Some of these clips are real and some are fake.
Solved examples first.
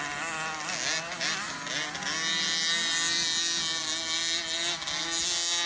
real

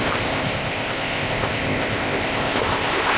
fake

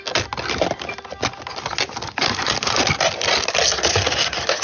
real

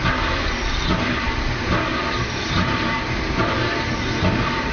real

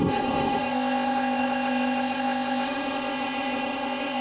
fake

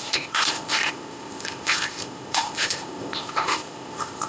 fake